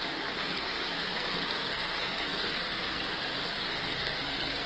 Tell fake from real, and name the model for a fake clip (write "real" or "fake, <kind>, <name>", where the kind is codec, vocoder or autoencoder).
fake, codec, SNAC